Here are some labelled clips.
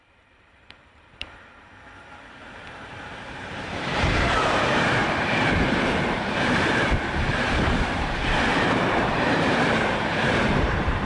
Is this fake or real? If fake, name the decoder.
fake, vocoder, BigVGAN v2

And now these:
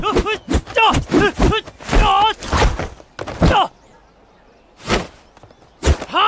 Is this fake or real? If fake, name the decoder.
real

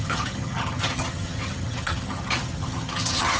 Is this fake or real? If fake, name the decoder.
fake, vocoder, HiFi-GAN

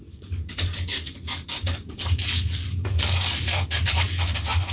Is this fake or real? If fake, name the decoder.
fake, codec, DAC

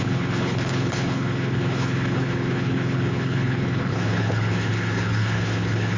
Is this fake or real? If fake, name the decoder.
fake, codec, HILCodec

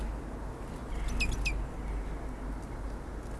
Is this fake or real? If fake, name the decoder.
real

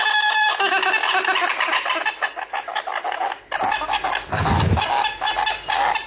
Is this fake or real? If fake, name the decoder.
real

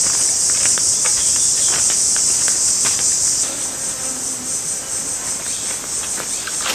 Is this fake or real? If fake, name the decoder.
real